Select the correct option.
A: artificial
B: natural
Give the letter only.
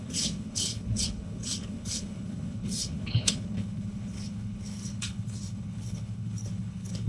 A